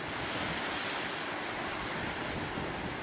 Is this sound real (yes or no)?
yes